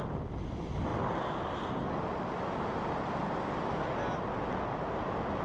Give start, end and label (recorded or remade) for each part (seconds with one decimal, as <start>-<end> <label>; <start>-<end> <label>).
0.0-5.4 recorded